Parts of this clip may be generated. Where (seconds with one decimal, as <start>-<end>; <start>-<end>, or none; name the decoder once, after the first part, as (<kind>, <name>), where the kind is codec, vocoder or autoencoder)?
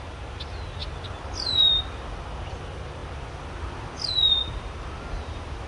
none